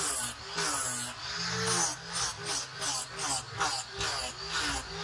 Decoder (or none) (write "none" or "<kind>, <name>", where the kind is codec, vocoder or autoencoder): none